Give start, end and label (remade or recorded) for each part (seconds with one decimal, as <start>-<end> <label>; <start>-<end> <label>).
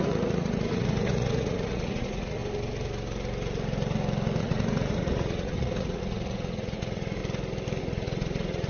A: 0.0-2.4 remade; 2.4-4.4 recorded; 4.4-7.2 remade; 7.2-7.8 recorded; 7.8-8.7 remade